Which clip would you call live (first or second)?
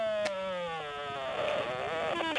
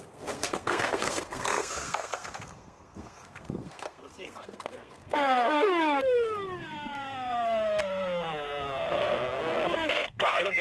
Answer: first